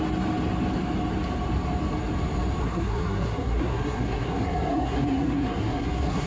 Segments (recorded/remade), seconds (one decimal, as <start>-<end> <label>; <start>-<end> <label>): 0.0-2.6 recorded; 2.6-6.3 remade

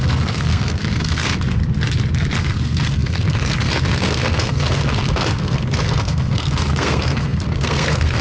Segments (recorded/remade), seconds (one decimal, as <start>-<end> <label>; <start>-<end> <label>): 0.0-1.6 remade; 1.6-2.4 recorded; 2.4-8.2 remade

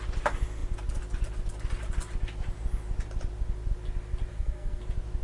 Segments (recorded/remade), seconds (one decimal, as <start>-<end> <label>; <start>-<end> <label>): 0.0-4.3 recorded; 4.3-4.8 remade; 4.8-5.2 recorded

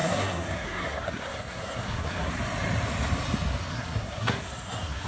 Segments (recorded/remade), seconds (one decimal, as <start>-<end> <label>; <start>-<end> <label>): 0.0-2.3 remade; 2.3-3.7 recorded; 3.7-5.1 remade

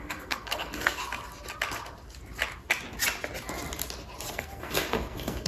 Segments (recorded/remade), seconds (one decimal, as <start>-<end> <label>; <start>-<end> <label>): 0.0-1.0 remade; 1.0-4.3 recorded; 4.3-5.5 remade

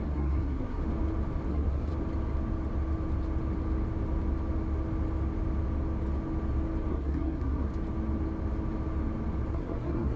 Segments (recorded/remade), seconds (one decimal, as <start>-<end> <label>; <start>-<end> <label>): 0.0-0.8 remade; 0.8-1.5 recorded; 1.5-1.9 remade; 1.9-6.9 recorded; 6.9-7.7 remade; 7.7-9.5 recorded; 9.5-10.2 remade

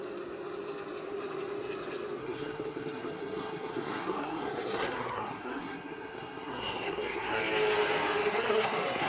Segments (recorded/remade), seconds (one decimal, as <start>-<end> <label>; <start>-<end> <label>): 0.0-2.2 recorded; 2.2-7.4 remade; 7.4-8.3 recorded; 8.3-9.1 remade